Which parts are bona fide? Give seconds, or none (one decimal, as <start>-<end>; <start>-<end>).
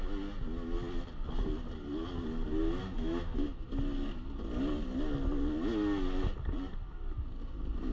0.0-2.8; 3.6-7.9